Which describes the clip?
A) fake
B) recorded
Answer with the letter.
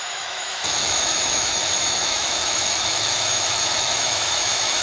A